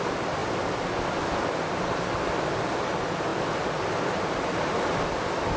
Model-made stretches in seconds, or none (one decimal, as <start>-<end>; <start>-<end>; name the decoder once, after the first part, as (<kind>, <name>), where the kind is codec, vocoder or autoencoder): none